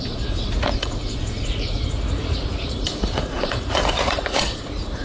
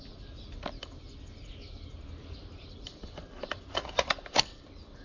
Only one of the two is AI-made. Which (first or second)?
first